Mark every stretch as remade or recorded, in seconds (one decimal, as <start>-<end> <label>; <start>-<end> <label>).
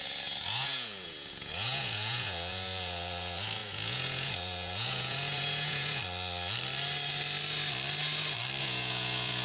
0.0-6.0 remade; 6.0-8.6 recorded; 8.6-9.4 remade